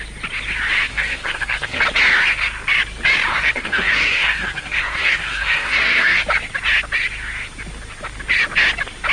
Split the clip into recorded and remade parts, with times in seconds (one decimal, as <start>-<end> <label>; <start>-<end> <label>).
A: 0.0-0.9 recorded; 0.9-1.8 remade; 1.8-3.3 recorded; 3.3-6.2 remade; 6.2-9.1 recorded